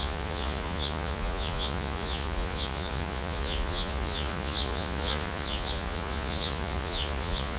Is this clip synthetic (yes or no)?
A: yes